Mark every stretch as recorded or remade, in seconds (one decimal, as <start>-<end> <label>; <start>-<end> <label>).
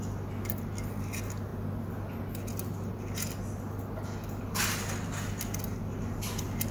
0.0-6.7 recorded